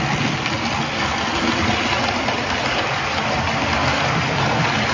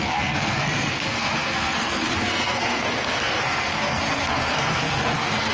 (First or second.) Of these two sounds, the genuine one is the first